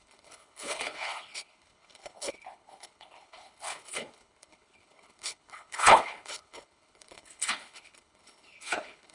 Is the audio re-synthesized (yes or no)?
yes